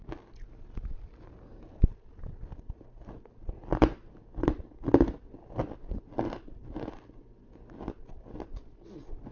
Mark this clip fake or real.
real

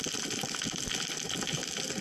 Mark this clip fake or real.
real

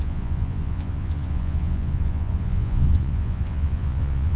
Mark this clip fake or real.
fake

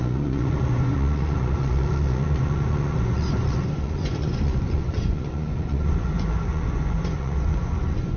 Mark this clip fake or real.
fake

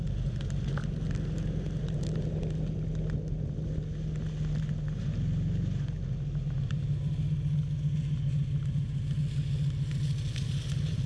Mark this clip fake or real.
real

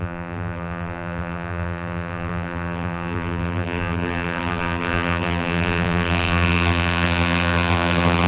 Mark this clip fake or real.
fake